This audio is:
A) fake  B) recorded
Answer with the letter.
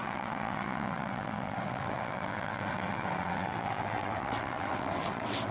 A